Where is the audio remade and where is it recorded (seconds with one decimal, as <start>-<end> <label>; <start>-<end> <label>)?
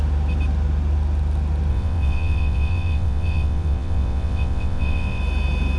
0.0-1.7 recorded; 1.7-5.2 remade; 5.2-5.8 recorded